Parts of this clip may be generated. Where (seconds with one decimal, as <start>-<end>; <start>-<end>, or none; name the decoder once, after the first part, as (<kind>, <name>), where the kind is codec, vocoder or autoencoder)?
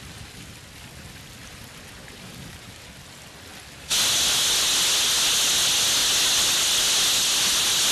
none